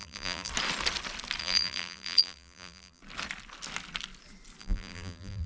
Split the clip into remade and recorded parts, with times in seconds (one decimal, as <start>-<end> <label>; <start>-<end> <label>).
0.0-0.5 remade; 0.5-1.4 recorded; 1.4-3.0 remade; 3.0-4.6 recorded; 4.6-5.5 remade